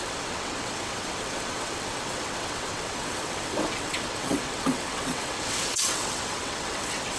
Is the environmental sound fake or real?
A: fake